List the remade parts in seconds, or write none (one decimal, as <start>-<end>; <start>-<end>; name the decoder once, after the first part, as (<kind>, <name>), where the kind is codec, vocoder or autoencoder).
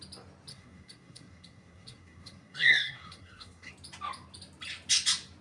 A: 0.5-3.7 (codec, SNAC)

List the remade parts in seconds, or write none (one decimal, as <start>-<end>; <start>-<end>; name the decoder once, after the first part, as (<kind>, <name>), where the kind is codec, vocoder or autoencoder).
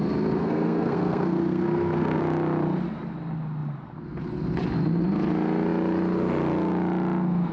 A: 0.4-2.2 (codec, SNAC)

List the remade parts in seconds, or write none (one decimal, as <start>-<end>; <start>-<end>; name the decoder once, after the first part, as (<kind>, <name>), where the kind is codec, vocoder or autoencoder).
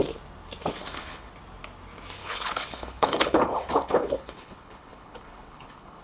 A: 0.8-1.3 (codec, HILCodec); 2.2-6.0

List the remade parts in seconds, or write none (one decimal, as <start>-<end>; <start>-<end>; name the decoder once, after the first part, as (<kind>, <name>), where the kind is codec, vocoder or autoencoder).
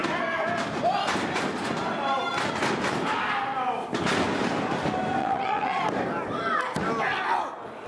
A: 5.2-5.8 (vocoder, WaveNeXt)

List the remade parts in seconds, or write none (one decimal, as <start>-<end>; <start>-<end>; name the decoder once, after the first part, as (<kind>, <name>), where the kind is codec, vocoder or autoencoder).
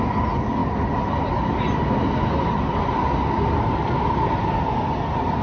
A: none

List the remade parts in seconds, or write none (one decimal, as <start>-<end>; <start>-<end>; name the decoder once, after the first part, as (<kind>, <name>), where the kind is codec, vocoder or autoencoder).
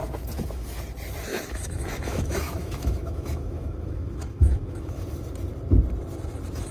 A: 1.3-5.0 (autoencoder, DAC-VAE)